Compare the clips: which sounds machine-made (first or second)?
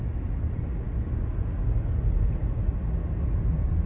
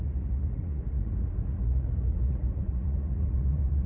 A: second